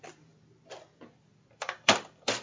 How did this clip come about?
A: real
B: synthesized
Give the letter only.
B